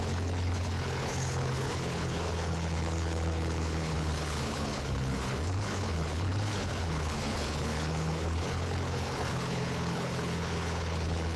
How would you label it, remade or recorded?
remade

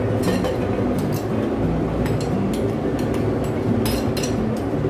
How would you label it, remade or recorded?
recorded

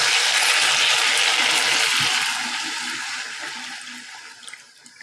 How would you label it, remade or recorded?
recorded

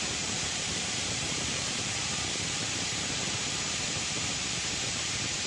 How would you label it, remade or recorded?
remade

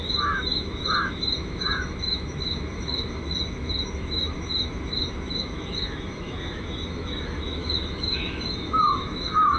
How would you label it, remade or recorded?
remade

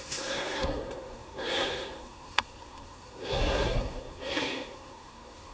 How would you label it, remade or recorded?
remade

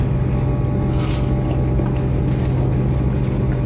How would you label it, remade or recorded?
recorded